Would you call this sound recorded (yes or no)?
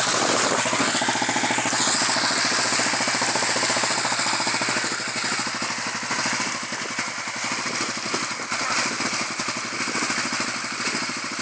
yes